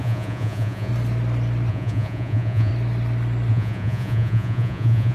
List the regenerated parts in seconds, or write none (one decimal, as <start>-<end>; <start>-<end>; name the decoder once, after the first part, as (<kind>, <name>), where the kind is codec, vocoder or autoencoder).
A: 0.0-0.9 (vocoder, Vocos); 1.7-2.7; 3.5-5.1